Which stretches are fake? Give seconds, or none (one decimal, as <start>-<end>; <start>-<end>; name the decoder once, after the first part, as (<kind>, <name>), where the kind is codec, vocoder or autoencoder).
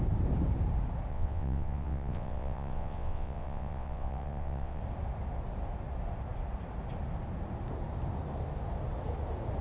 1.1-4.8 (vocoder, WaveNeXt)